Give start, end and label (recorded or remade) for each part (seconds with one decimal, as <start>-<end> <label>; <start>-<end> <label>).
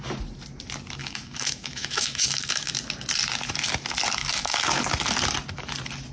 0.0-1.0 recorded; 1.0-2.7 remade; 2.7-4.2 recorded; 4.2-4.8 remade; 4.8-6.1 recorded